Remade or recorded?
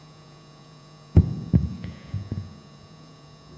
remade